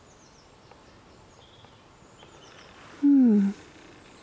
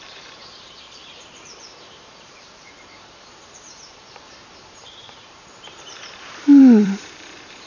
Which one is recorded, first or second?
first